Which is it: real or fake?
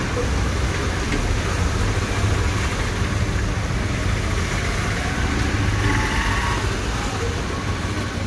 real